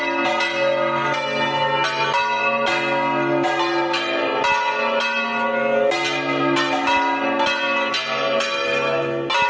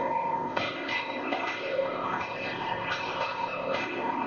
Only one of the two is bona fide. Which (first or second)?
first